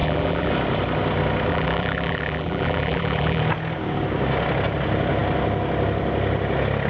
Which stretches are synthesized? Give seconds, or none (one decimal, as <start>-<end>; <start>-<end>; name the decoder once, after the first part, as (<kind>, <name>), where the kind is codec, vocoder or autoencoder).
0.0-0.5 (vocoder, BigVGAN v2); 1.5-3.4